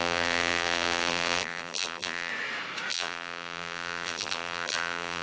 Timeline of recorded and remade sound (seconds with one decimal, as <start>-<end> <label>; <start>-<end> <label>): 0.0-2.3 remade; 2.3-2.9 recorded; 2.9-5.2 remade